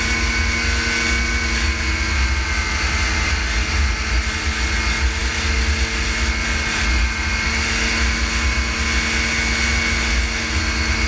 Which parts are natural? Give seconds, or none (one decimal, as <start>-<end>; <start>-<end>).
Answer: 0.0-11.1